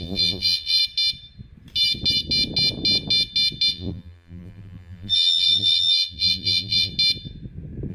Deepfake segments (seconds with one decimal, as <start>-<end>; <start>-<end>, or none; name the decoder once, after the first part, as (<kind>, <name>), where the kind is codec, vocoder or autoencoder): 0.0-0.8 (vocoder, BigVGAN v2); 3.7-6.9